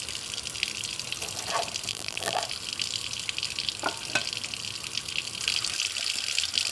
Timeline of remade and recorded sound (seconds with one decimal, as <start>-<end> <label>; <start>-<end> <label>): 0.0-1.9 recorded; 1.9-2.4 remade; 2.4-6.7 recorded